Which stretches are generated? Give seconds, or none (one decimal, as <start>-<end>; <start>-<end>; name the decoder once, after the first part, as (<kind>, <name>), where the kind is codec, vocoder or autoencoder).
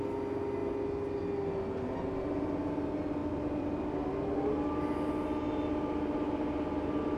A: 3.2-4.1 (vocoder, BigVGAN v2)